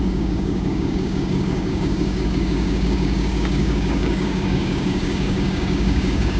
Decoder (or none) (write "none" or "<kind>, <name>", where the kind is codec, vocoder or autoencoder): codec, DAC